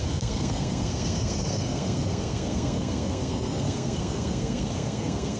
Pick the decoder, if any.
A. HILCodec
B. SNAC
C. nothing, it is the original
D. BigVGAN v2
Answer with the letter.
B